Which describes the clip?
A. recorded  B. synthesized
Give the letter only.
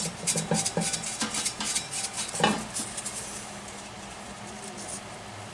A